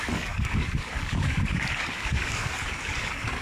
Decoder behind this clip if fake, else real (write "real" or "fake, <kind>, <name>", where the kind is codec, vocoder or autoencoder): fake, codec, DAC